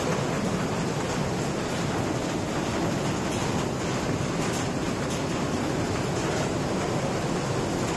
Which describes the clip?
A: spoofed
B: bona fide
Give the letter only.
B